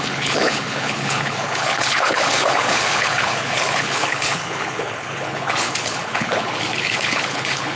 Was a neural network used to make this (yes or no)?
yes